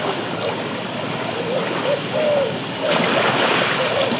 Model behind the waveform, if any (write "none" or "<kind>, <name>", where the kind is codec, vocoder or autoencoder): none